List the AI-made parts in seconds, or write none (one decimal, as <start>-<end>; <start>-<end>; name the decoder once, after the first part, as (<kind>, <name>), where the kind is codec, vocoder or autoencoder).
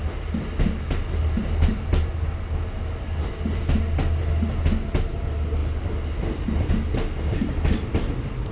none